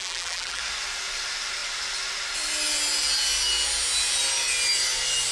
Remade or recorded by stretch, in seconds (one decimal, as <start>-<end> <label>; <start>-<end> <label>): 0.0-0.6 remade; 0.6-5.3 recorded